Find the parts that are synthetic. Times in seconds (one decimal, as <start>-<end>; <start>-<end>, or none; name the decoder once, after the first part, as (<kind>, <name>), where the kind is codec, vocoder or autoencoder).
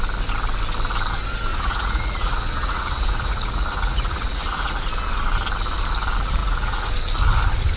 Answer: 1.5-4.8 (vocoder, Vocos); 6.4-6.9